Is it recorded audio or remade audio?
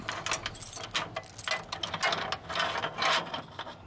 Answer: recorded